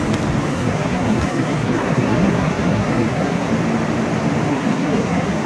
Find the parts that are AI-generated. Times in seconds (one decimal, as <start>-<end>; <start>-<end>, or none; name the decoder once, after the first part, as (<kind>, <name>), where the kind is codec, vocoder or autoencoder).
0.5-3.5 (codec, SNAC); 4.5-5.5

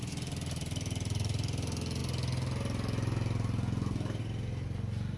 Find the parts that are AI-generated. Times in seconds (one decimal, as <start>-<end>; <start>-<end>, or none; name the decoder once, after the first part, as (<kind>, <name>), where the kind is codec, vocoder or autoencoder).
none

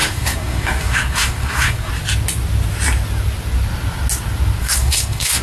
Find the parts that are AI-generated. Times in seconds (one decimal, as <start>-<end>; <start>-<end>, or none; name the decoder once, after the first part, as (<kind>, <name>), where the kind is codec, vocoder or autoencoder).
0.0-1.9 (codec, SNAC); 4.6-5.4